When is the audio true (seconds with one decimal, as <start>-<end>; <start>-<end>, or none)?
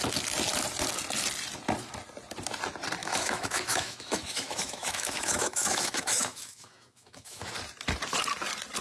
0.0-3.0; 7.5-8.8